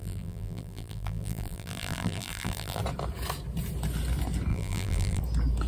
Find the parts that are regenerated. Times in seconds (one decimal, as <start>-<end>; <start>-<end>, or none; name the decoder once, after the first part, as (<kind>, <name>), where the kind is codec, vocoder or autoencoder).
0.0-2.8 (vocoder, BigVGAN v2); 4.5-5.2